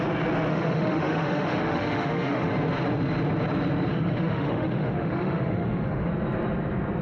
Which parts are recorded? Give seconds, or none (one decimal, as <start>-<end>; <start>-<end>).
0.0-0.5; 2.5-3.9; 6.1-7.0